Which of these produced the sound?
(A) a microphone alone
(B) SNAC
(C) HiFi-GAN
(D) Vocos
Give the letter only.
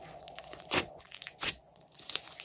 D